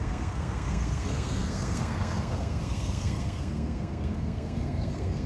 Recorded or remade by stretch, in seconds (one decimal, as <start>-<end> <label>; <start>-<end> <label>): 0.0-5.3 remade